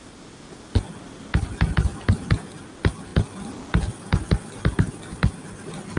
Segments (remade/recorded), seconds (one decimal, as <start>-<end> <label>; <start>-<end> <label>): 0.0-6.0 recorded